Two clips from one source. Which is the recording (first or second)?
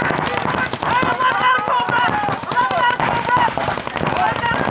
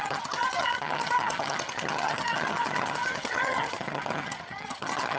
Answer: first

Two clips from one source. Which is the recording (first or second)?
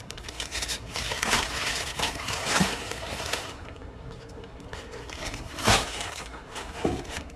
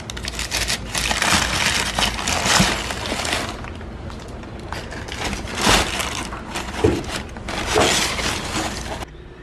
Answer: second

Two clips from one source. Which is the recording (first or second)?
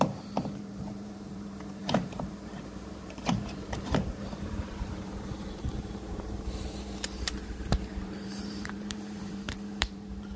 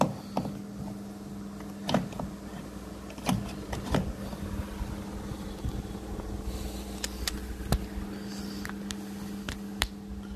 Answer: second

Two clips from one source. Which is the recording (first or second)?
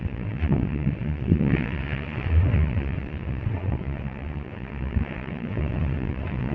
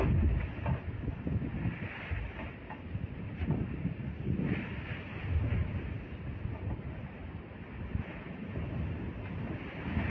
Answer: second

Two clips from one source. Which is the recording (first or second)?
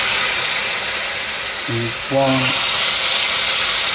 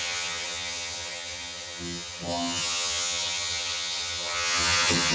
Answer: first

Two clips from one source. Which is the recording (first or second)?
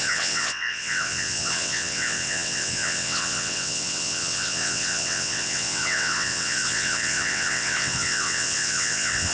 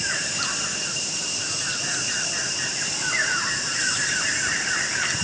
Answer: second